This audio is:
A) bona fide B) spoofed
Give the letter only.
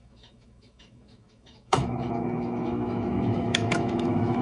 B